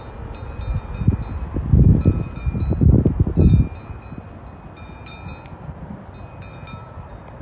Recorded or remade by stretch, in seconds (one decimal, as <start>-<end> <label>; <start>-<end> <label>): 0.0-7.4 recorded